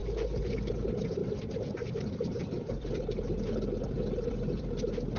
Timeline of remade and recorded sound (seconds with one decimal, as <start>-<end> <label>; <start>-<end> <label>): 0.0-5.2 recorded